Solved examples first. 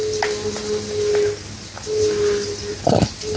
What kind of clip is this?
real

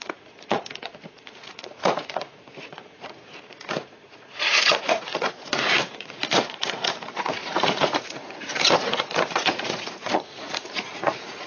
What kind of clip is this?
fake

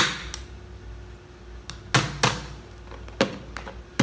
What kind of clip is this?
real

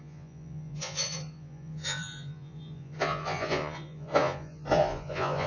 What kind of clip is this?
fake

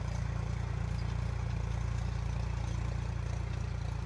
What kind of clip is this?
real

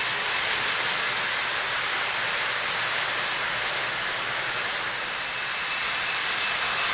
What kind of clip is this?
real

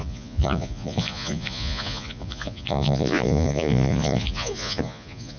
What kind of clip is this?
fake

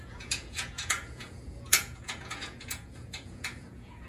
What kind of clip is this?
fake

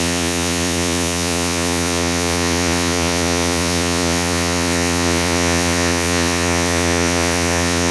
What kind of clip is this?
fake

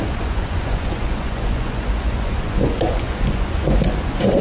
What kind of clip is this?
fake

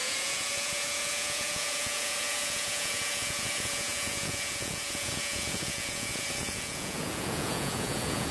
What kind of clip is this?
fake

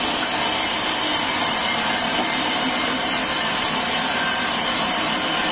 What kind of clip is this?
real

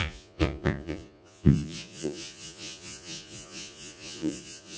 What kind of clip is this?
fake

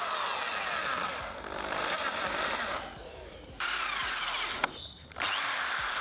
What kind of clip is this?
real